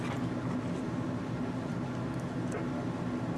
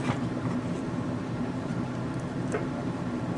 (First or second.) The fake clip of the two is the second